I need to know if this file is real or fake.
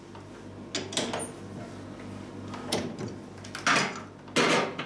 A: real